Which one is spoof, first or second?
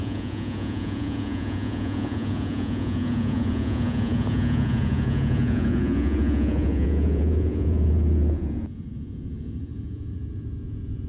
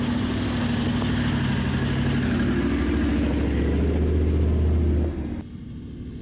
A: first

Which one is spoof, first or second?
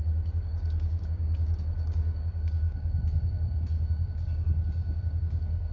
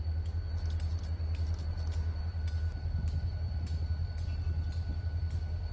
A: first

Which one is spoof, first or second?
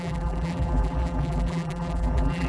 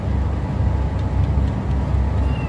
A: first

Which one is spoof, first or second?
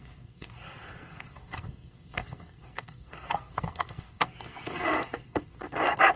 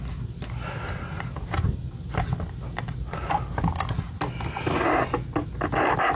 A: first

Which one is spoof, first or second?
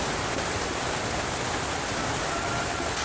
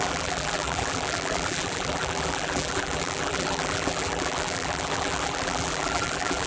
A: second